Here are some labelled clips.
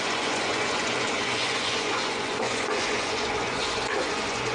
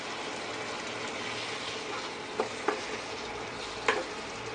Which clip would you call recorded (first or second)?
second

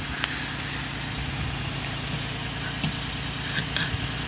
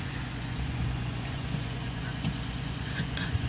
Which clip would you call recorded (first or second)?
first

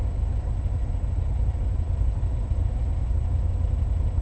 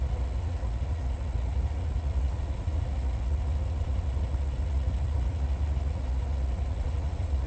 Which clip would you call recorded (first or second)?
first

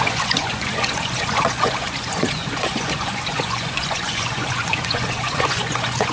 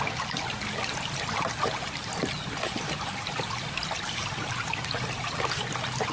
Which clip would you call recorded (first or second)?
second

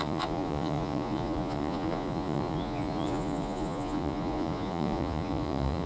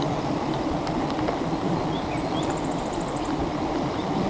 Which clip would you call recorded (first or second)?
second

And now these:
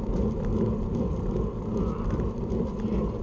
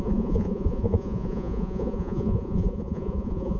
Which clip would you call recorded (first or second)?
first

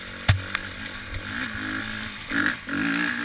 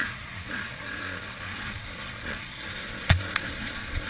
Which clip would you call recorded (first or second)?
first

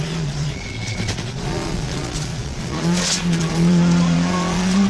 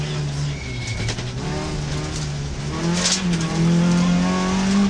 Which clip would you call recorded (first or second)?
second